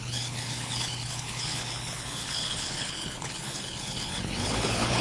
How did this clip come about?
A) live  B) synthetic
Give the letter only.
B